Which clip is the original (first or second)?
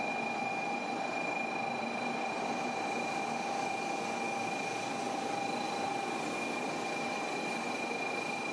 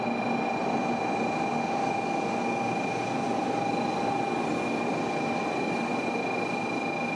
second